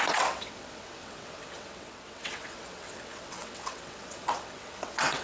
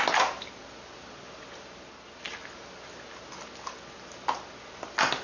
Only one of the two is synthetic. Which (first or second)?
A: first